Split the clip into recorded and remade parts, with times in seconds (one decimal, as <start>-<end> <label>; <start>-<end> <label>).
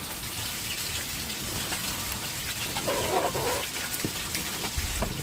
0.0-5.2 recorded